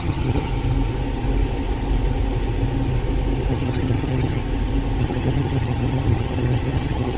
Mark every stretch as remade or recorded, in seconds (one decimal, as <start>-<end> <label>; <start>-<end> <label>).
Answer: 0.0-0.5 remade; 0.5-3.5 recorded; 3.5-4.4 remade; 4.4-5.0 recorded; 5.0-7.2 remade